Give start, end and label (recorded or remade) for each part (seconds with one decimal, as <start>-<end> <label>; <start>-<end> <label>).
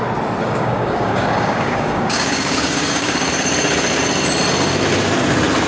0.0-0.4 recorded; 0.4-3.3 remade; 3.3-5.7 recorded